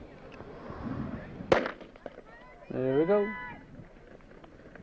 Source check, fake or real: real